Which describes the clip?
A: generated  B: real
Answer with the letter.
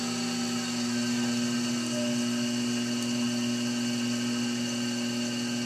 B